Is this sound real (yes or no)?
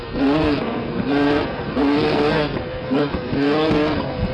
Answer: no